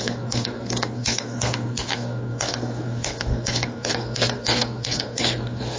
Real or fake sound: fake